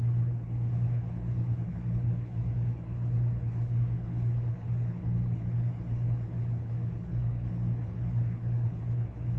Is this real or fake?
fake